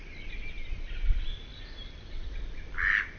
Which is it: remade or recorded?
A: recorded